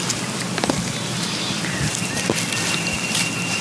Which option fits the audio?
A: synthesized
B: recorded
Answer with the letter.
B